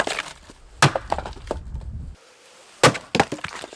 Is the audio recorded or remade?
recorded